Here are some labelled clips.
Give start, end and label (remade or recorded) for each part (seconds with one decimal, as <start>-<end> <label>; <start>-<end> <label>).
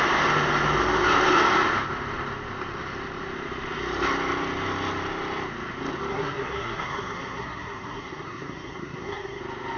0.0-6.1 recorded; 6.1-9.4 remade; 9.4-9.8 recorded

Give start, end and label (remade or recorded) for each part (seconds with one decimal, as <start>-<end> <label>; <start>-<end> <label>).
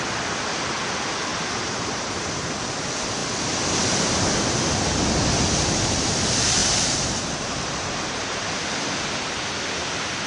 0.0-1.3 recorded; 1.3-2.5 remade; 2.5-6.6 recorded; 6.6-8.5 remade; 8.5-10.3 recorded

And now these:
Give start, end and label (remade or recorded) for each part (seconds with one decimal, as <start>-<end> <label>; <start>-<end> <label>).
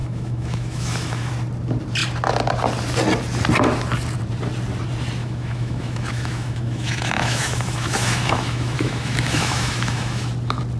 0.0-1.3 remade; 1.3-5.2 recorded; 5.2-10.3 remade; 10.3-10.8 recorded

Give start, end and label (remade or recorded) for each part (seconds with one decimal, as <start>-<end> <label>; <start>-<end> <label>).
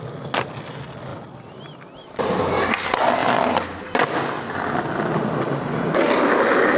0.0-6.8 recorded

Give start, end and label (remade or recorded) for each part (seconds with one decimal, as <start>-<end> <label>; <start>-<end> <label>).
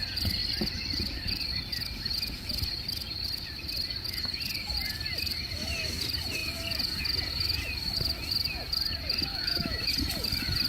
0.0-9.3 recorded; 9.3-9.9 remade; 9.9-10.7 recorded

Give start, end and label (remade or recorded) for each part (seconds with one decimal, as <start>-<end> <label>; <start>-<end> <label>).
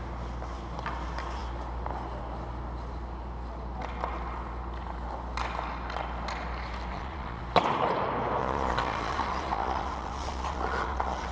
0.0-6.9 recorded; 6.9-7.4 remade; 7.4-8.4 recorded; 8.4-11.3 remade